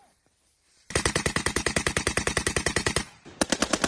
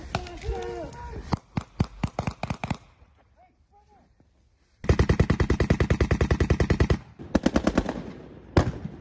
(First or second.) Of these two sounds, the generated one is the first